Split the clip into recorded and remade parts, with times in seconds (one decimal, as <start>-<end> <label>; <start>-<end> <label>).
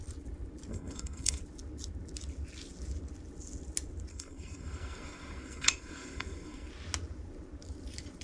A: 0.0-0.7 recorded; 0.7-1.4 remade; 1.4-4.1 recorded; 4.1-6.7 remade; 6.7-8.2 recorded